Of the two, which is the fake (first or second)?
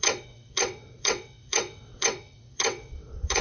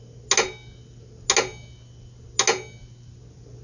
first